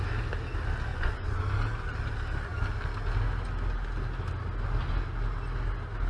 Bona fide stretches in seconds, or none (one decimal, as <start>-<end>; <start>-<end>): 0.0-0.9; 1.4-6.1

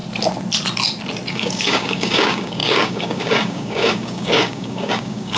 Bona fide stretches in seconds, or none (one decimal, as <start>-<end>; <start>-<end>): 0.0-1.3